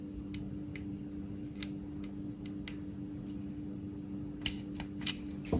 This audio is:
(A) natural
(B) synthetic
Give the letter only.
A